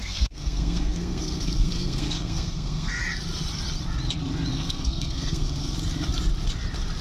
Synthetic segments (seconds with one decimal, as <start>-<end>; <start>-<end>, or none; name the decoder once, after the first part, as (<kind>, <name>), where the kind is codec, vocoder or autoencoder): 0.0-3.0 (codec, SNAC); 4.5-5.7